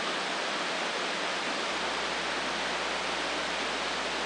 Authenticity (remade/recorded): recorded